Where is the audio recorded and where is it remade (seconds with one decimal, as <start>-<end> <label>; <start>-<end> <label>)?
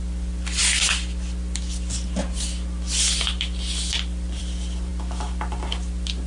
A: 0.0-6.3 recorded